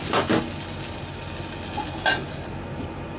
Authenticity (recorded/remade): recorded